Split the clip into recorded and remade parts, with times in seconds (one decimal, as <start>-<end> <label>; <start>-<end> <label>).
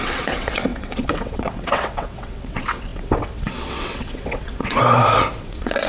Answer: 0.0-4.8 remade; 4.8-5.4 recorded; 5.4-5.9 remade